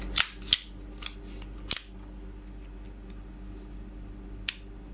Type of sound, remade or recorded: recorded